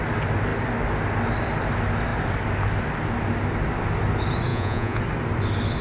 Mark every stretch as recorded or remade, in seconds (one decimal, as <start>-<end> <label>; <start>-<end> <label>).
0.0-4.5 recorded; 4.5-5.0 remade; 5.0-5.8 recorded